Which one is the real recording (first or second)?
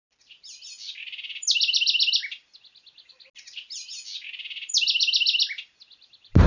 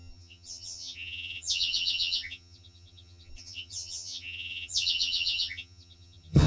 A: first